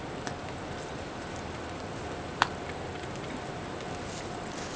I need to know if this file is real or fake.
real